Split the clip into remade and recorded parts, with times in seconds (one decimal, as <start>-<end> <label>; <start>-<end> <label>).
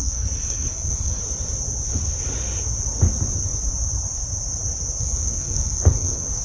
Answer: 0.0-1.2 remade; 1.2-5.0 recorded; 5.0-6.4 remade